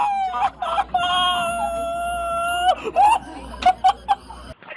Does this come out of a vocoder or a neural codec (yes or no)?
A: no